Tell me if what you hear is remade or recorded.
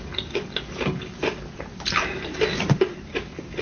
recorded